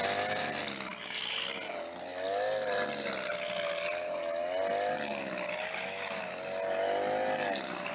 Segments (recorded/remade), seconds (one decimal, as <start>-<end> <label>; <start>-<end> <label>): 0.0-7.9 recorded